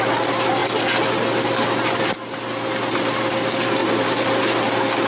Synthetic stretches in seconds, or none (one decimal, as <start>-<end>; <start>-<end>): none